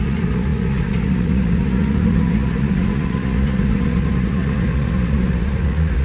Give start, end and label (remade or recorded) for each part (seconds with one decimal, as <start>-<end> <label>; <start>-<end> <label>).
0.0-6.0 remade